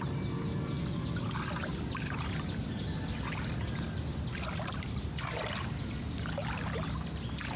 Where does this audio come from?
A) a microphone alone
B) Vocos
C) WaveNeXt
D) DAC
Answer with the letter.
A